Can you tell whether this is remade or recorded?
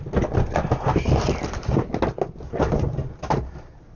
recorded